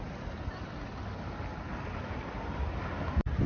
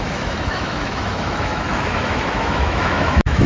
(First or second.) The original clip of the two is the first